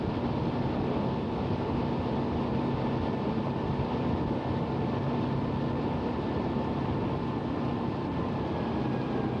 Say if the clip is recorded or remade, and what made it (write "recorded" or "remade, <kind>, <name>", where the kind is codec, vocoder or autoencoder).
recorded